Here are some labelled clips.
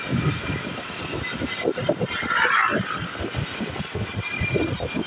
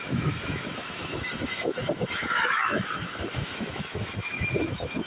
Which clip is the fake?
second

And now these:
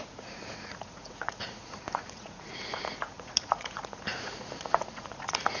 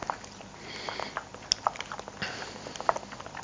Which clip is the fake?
first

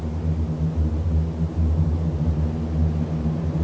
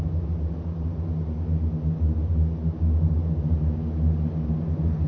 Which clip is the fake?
first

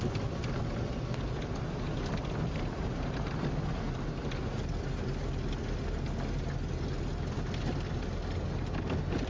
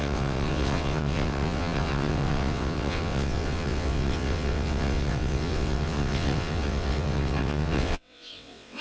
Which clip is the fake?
second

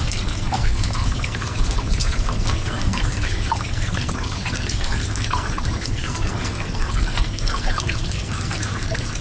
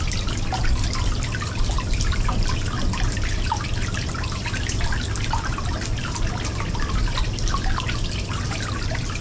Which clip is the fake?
first